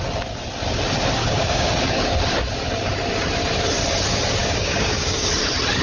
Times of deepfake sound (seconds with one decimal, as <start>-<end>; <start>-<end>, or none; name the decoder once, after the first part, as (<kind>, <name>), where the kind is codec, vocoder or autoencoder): 1.2-2.1 (codec, DAC); 4.4-5.3